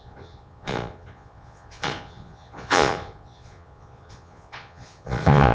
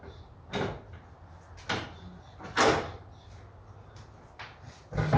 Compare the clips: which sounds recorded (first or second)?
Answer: second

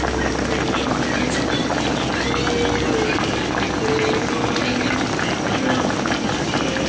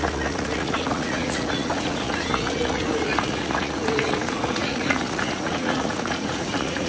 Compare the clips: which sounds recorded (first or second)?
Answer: first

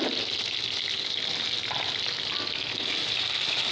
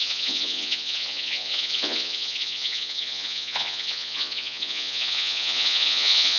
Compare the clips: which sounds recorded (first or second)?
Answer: first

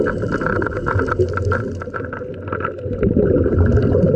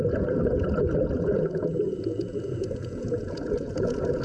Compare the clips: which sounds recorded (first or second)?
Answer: first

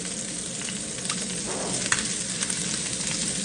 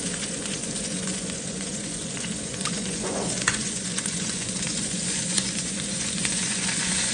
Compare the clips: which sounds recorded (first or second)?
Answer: first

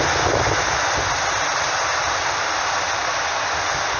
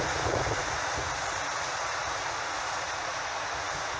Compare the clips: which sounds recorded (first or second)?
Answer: first